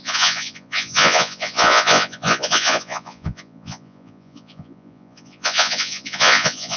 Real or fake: fake